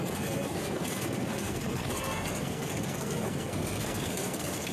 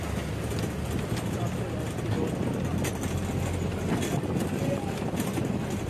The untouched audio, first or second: second